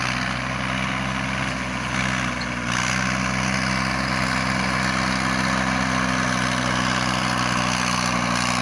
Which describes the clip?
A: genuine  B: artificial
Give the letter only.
A